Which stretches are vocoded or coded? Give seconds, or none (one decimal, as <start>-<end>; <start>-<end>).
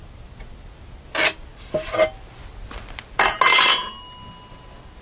none